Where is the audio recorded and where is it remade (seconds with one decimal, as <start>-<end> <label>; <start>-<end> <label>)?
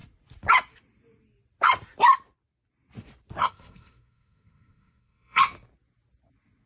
0.0-3.4 recorded; 3.4-5.4 remade; 5.4-6.7 recorded